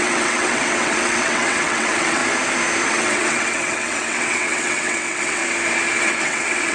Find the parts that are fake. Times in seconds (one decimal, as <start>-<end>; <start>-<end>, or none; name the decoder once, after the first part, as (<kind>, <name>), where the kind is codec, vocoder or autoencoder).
0.0-2.2 (vocoder, WaveNeXt); 2.9-5.4; 6.0-6.7